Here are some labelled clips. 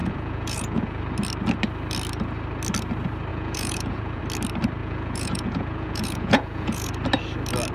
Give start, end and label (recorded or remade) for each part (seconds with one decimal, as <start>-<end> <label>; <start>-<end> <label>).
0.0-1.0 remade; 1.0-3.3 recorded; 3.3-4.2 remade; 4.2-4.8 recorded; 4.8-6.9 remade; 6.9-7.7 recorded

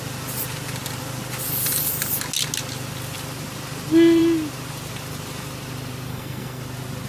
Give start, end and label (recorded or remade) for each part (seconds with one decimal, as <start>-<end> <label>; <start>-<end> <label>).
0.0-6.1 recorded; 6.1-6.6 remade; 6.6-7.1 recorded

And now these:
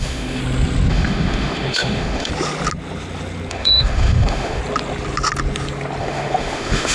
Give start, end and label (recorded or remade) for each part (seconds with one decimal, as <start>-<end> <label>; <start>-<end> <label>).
0.0-0.4 remade; 0.4-0.9 recorded; 0.9-2.3 remade; 2.3-3.5 recorded; 3.5-4.6 remade; 4.6-6.0 recorded; 6.0-6.9 remade

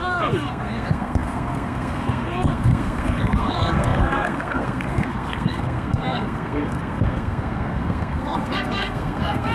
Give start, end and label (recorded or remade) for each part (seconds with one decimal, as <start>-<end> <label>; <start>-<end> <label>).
0.0-9.5 remade